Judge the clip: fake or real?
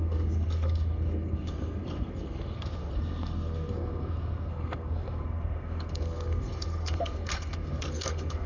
fake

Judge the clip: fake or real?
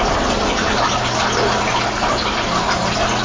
real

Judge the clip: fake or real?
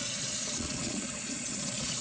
fake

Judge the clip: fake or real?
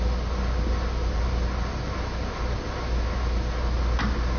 real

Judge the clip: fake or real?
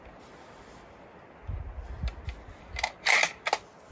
real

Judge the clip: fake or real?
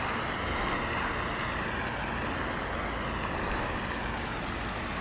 real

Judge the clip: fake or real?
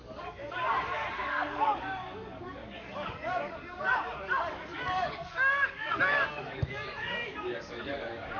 fake